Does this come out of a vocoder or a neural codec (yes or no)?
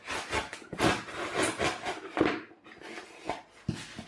no